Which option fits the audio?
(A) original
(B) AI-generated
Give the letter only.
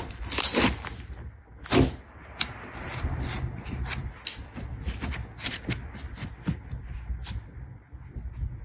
A